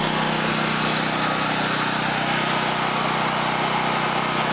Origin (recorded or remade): recorded